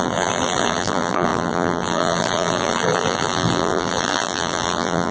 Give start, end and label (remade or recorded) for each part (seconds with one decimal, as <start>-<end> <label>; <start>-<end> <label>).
0.0-5.1 remade